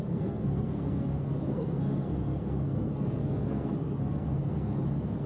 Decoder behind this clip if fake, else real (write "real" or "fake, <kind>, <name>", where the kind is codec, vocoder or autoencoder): fake, codec, SNAC